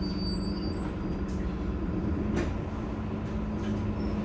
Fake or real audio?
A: real